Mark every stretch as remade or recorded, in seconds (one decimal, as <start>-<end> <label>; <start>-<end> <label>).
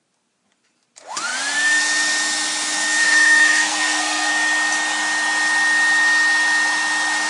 0.0-3.0 recorded; 3.0-4.3 remade; 4.3-7.3 recorded